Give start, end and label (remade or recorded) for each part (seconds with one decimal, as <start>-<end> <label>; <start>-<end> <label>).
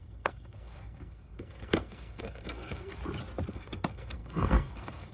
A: 0.0-3.0 remade; 3.0-3.5 recorded; 3.5-5.1 remade